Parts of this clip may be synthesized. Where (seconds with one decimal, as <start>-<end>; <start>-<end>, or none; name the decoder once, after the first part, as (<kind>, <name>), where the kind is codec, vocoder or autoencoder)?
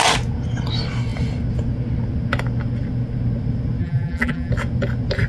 3.8-4.5 (vocoder, BigVGAN v2)